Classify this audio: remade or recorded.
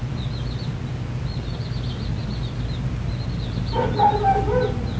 recorded